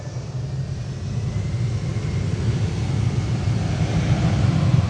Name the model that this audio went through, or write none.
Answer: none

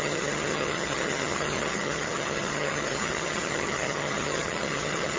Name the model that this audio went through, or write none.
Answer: vocoder, HiFi-GAN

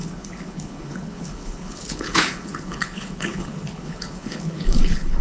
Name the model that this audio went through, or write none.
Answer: codec, HILCodec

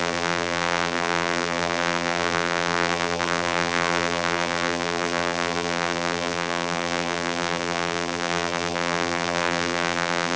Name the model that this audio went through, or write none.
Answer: vocoder, BigVGAN v2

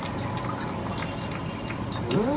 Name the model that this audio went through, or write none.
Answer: none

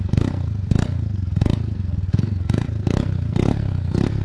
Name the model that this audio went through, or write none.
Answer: codec, SNAC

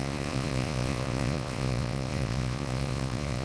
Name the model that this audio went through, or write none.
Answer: vocoder, Vocos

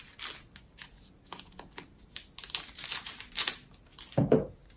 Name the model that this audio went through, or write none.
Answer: none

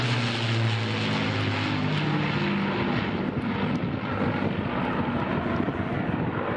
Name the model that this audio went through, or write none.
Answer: none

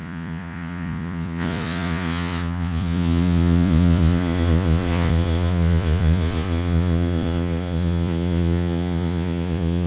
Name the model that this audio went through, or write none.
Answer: vocoder, Vocos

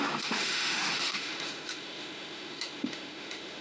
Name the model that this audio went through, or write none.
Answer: autoencoder, DAC-VAE